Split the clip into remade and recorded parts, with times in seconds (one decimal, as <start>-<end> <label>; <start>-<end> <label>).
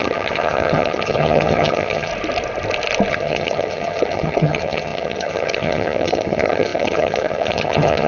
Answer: 0.0-2.1 remade; 2.1-3.1 recorded; 3.1-8.1 remade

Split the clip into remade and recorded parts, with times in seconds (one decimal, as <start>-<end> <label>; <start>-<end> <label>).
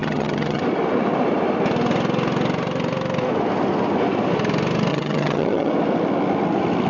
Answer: 0.0-0.6 remade; 0.6-4.9 recorded; 4.9-5.7 remade; 5.7-6.9 recorded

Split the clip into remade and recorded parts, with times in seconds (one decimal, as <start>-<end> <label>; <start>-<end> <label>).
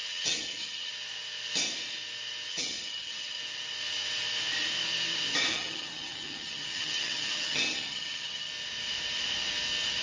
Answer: 0.0-0.9 remade; 0.9-2.5 recorded; 2.5-3.4 remade; 3.4-5.5 recorded; 5.5-8.5 remade; 8.5-10.0 recorded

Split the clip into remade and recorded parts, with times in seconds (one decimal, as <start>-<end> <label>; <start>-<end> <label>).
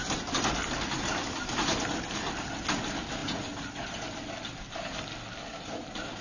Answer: 0.0-6.2 recorded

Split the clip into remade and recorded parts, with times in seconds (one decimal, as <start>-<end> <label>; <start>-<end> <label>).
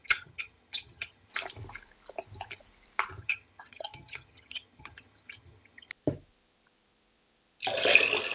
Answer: 0.0-1.3 remade; 1.3-3.2 recorded; 3.2-5.9 remade; 5.9-8.3 recorded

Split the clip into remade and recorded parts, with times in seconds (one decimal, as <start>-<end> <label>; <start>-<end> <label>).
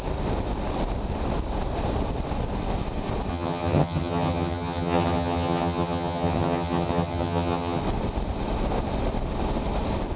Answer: 0.0-3.3 recorded; 3.3-7.8 remade; 7.8-10.2 recorded